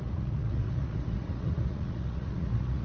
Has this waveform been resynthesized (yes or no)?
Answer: yes